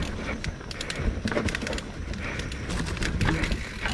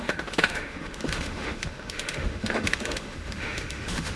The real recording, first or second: first